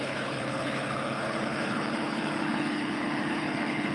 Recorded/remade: remade